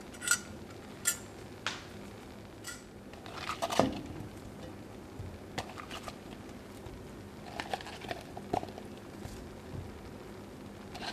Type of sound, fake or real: real